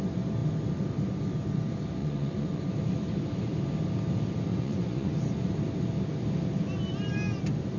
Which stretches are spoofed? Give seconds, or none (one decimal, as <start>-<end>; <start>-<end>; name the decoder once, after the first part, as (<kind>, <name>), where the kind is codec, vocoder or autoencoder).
2.0-2.6 (vocoder, Vocos); 4.5-5.1